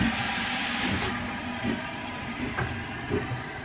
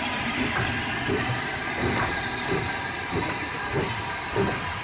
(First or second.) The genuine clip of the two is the first